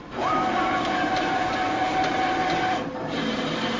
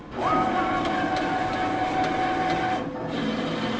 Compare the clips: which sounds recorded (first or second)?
second